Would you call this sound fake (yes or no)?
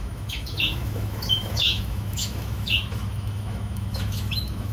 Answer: yes